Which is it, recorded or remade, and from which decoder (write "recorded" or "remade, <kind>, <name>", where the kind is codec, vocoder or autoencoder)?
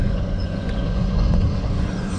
remade, vocoder, Vocos